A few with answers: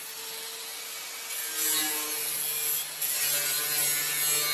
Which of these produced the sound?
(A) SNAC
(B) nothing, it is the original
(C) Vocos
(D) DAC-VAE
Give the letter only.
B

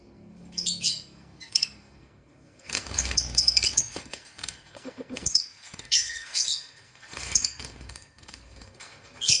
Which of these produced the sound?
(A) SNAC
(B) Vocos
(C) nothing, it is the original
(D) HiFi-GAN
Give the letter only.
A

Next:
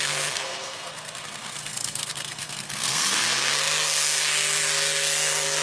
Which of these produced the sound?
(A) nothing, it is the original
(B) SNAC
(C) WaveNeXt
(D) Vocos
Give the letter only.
B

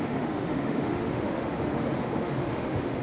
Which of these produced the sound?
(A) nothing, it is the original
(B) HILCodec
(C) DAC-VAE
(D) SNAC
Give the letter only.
C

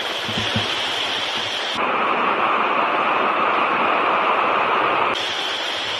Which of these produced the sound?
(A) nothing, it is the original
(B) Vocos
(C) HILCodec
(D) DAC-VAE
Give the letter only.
A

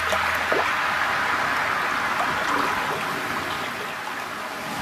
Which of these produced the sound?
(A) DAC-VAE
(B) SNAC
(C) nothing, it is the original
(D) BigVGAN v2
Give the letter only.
C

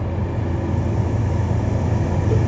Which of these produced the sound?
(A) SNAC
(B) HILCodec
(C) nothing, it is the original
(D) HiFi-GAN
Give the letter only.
C